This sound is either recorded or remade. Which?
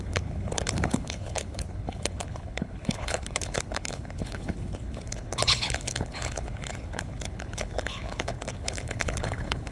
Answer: remade